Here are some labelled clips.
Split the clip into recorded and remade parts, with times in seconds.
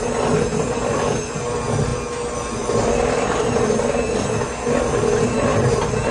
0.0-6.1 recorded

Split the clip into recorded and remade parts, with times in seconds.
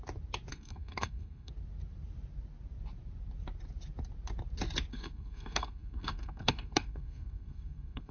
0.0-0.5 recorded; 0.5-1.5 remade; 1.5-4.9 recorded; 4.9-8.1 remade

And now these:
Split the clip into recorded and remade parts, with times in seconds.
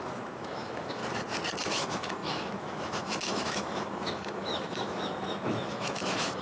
0.0-1.0 remade; 1.0-1.6 recorded; 1.6-6.4 remade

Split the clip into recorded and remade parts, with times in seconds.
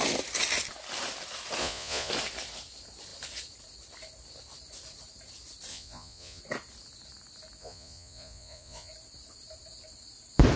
0.0-1.6 recorded; 1.6-2.1 remade; 2.1-5.7 recorded; 5.7-6.4 remade; 6.4-7.6 recorded; 7.6-8.9 remade; 8.9-10.6 recorded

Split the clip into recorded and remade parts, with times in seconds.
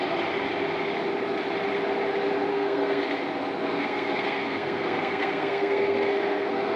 0.0-2.5 recorded; 2.5-3.0 remade; 3.0-3.6 recorded; 3.6-6.8 remade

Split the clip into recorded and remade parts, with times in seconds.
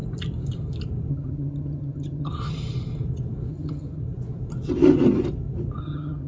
0.0-1.1 recorded; 1.1-2.3 remade; 2.3-3.5 recorded; 3.5-4.0 remade; 4.0-5.8 recorded; 5.8-6.3 remade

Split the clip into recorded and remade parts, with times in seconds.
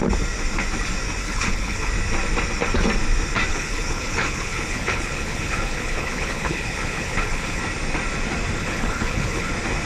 0.0-1.2 recorded; 1.2-1.9 remade; 1.9-3.5 recorded; 3.5-7.6 remade; 7.6-8.6 recorded; 8.6-9.5 remade; 9.5-9.9 recorded